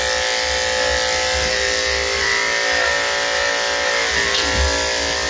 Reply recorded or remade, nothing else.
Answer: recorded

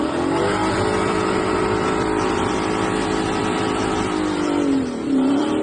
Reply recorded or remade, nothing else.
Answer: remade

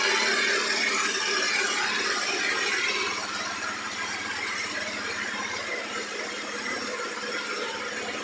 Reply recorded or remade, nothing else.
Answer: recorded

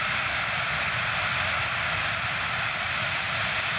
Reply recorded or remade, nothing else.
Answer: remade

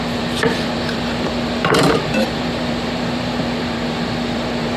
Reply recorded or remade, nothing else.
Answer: remade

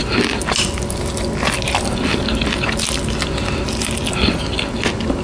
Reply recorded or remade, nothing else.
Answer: recorded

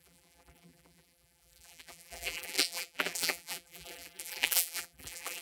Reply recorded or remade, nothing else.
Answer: remade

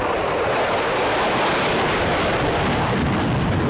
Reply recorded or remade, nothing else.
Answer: recorded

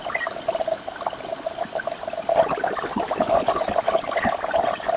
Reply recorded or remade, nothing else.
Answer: recorded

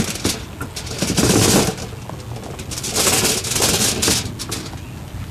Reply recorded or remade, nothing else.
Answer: recorded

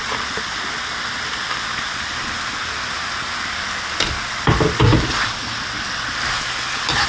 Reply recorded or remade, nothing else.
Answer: recorded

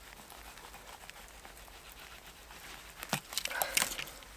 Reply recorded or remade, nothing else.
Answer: recorded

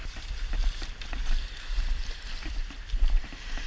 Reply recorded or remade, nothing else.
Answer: remade